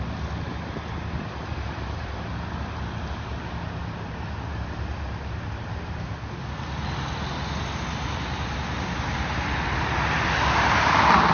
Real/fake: real